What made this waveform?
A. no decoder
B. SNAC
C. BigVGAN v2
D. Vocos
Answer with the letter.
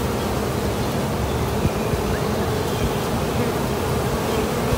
A